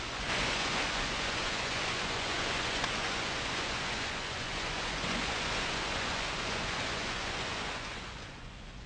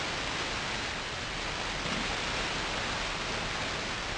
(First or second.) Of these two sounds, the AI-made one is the first